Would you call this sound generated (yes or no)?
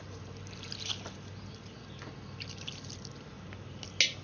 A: no